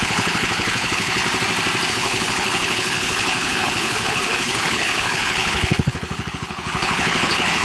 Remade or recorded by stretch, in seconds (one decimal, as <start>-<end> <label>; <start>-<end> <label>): 0.0-1.2 remade; 1.2-1.9 recorded; 1.9-7.6 remade